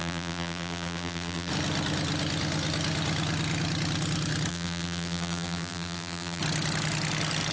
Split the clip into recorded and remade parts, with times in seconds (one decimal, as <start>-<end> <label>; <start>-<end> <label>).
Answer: 0.0-1.5 remade; 1.5-4.5 recorded; 4.5-6.4 remade; 6.4-7.5 recorded